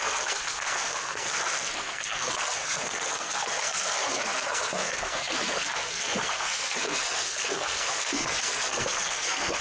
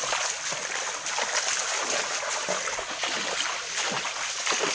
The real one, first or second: second